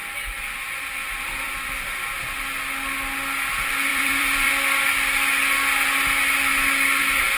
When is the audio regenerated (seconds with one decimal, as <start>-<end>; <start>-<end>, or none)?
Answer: 1.0-1.7; 3.9-4.5